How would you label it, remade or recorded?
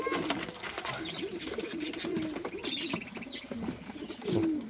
recorded